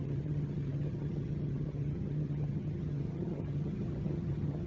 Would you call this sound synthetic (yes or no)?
yes